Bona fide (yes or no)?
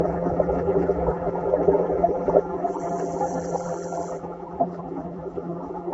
no